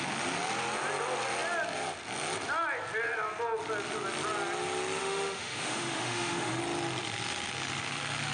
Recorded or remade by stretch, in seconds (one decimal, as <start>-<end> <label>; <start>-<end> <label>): 0.0-5.0 recorded; 5.0-6.6 remade; 6.6-8.3 recorded